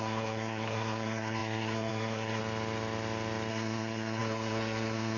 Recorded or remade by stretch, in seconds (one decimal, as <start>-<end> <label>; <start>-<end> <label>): 0.0-2.4 remade; 2.4-3.5 recorded; 3.5-5.2 remade